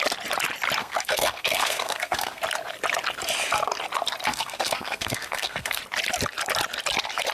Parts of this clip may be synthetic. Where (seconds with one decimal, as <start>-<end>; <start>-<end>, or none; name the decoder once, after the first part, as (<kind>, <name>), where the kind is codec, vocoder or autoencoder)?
0.8-2.4 (codec, SNAC); 4.3-5.8